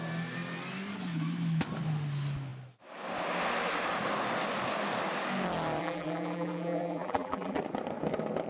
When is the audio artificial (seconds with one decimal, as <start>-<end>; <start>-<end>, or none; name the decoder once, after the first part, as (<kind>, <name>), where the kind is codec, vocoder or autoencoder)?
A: 5.8-7.6 (vocoder, BigVGAN v2)